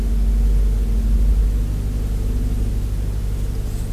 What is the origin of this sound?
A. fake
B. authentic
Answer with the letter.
B